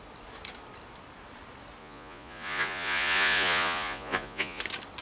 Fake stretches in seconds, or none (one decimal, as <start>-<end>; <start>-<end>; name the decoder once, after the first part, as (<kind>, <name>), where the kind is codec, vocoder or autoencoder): 1.8-4.6 (vocoder, Vocos)